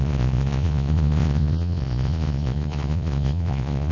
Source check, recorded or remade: remade